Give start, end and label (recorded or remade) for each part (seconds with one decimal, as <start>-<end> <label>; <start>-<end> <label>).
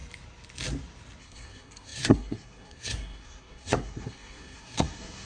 0.0-1.2 recorded; 1.2-5.3 remade